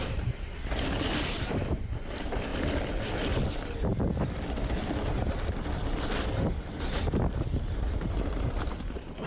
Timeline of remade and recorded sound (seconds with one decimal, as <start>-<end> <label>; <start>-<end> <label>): 0.0-2.5 remade; 2.5-7.4 recorded; 7.4-9.3 remade